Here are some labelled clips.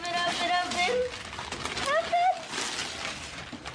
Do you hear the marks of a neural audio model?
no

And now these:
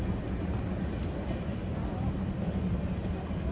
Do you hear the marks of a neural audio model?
no